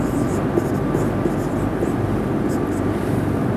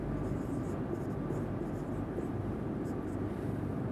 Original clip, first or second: first